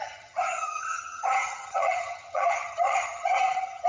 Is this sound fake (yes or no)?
yes